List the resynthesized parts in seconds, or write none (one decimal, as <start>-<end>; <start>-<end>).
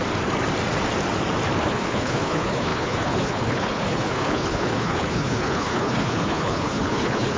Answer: 1.6-7.4